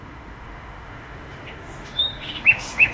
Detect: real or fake fake